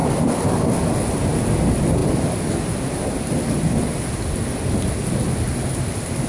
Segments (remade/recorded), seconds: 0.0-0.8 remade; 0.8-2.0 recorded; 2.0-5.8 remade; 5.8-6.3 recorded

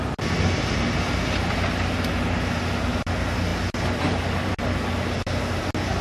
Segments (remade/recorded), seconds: 0.0-6.0 recorded